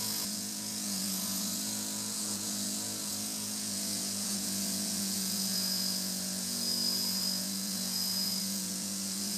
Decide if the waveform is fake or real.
fake